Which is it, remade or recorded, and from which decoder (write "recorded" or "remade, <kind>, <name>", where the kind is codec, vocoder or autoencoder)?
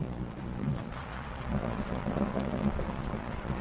remade, vocoder, Vocos